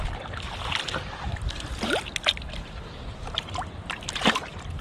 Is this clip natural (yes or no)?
yes